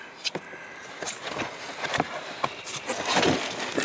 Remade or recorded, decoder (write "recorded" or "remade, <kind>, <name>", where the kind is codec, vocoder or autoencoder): recorded